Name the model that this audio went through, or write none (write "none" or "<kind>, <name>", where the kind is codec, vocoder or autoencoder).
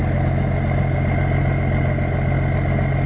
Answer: none